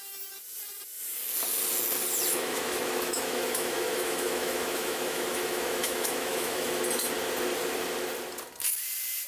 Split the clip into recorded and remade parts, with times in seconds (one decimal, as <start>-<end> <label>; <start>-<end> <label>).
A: 0.0-2.3 recorded; 2.3-6.8 remade; 6.8-9.3 recorded